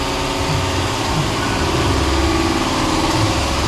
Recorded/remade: recorded